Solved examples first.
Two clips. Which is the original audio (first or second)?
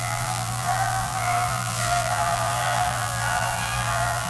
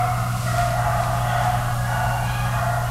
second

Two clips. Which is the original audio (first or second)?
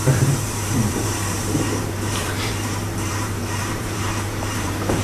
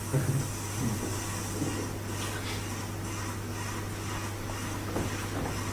second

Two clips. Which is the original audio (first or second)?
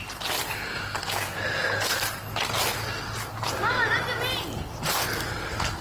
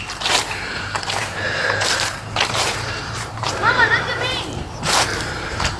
first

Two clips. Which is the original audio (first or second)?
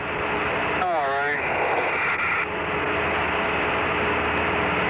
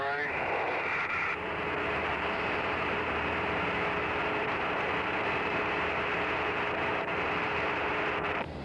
first